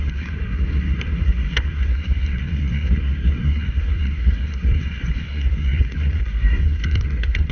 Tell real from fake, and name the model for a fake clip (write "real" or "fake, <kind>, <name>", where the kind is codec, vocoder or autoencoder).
fake, codec, SNAC